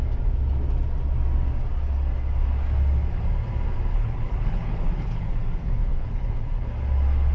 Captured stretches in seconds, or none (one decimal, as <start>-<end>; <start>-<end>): 0.0-3.9; 5.3-5.8; 6.7-7.3